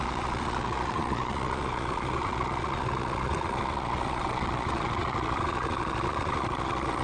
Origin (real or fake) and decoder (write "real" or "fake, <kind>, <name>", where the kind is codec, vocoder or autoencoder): fake, vocoder, Vocos